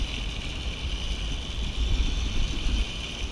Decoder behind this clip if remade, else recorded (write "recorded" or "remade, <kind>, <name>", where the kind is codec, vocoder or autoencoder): remade, vocoder, BigVGAN v2